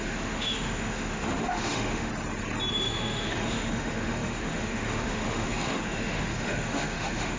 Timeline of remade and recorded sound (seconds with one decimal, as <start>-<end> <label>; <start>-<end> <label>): 0.0-2.1 remade; 2.1-2.7 recorded; 2.7-7.4 remade